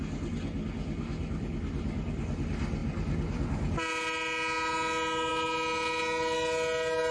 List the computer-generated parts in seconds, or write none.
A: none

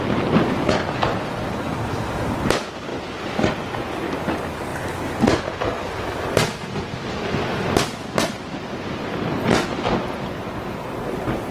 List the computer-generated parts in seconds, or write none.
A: none